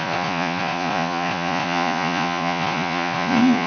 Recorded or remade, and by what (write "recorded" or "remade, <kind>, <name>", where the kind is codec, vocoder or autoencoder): remade, vocoder, Vocos